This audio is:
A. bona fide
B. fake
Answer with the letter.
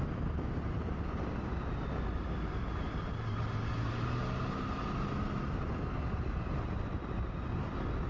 A